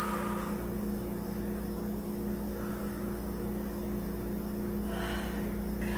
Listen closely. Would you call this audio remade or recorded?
recorded